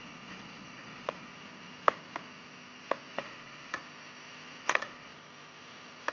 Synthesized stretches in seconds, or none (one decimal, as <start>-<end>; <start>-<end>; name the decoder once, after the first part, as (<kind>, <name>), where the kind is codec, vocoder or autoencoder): 0.0-1.3 (vocoder, Vocos); 3.1-3.8; 4.6-5.1